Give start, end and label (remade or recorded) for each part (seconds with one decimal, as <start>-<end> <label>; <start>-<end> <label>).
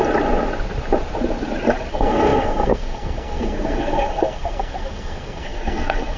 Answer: 0.0-1.9 recorded; 1.9-6.2 remade